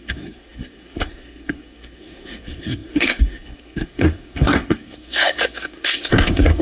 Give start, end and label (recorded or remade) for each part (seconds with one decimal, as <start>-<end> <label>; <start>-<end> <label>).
0.0-6.6 remade